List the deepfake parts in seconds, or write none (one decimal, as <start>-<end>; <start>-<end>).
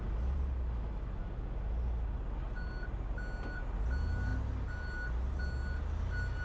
none